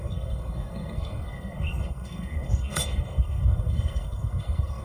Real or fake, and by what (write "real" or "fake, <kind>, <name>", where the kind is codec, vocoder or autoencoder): fake, codec, SNAC